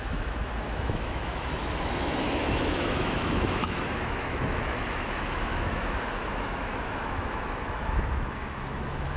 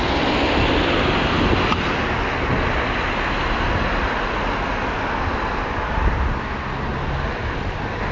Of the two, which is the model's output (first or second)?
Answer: first